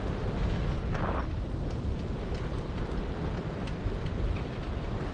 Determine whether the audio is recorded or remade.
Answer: recorded